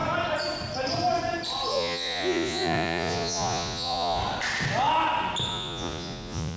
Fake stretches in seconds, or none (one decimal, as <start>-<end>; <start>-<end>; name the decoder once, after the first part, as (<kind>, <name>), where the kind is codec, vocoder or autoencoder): 1.7-4.2 (vocoder, Vocos); 5.5-6.6